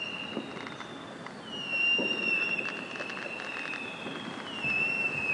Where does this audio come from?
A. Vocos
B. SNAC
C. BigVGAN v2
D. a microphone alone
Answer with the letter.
D